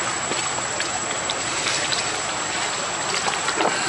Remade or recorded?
recorded